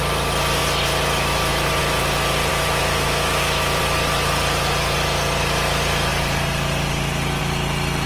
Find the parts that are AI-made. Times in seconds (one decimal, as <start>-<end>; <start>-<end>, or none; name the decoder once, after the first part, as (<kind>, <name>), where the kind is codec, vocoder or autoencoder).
2.5-3.8 (autoencoder, DAC-VAE)